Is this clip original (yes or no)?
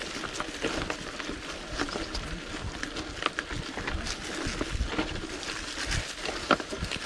yes